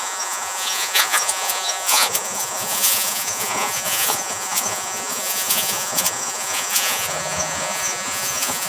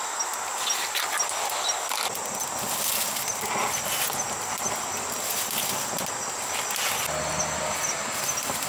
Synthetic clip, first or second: first